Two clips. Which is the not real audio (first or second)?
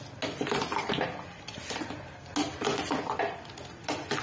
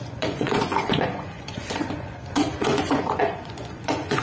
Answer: second